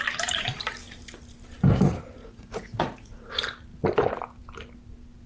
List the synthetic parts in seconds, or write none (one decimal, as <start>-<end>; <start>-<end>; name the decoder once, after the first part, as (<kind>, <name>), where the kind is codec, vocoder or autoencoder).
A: 2.2-3.3 (vocoder, Vocos)